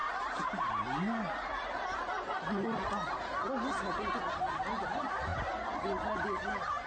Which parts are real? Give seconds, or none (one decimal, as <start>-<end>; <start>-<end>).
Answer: 0.0-6.9

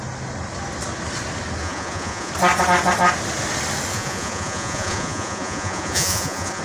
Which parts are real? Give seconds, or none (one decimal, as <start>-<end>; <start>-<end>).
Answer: 0.0-1.6; 2.3-3.9

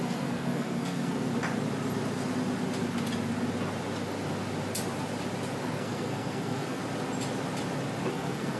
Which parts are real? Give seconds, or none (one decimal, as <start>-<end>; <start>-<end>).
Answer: 1.3-5.6; 6.8-8.1

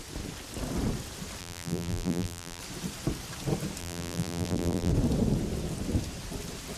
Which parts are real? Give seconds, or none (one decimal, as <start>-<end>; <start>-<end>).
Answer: 0.0-1.4; 2.6-3.8; 4.9-6.8

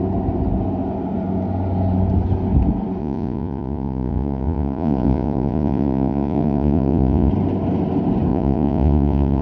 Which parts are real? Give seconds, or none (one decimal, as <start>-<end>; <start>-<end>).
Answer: 0.0-3.0; 7.3-8.3